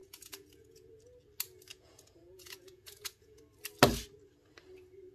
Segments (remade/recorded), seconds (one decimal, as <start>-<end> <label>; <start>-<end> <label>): 0.0-0.9 remade; 0.9-1.7 recorded; 1.7-3.4 remade; 3.4-5.1 recorded